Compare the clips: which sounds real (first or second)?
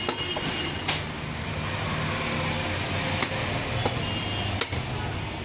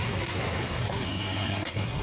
first